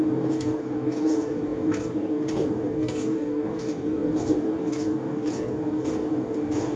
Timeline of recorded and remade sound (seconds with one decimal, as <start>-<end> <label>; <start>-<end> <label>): 0.0-6.8 remade